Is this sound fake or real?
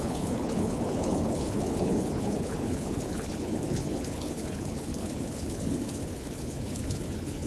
fake